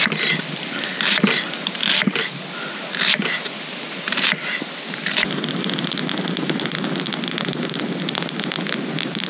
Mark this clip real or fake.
real